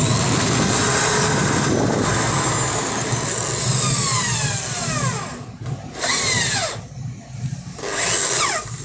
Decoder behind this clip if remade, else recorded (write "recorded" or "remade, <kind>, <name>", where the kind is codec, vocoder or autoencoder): recorded